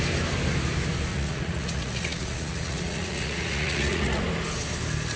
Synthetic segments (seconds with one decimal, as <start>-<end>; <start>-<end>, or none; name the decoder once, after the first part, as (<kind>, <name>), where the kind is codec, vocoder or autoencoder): 1.1-4.2 (vocoder, Vocos)